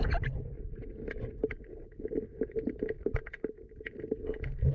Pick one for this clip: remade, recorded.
recorded